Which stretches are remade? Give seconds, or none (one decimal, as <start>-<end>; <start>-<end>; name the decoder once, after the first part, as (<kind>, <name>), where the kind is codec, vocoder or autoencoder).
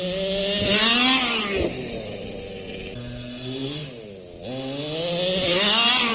none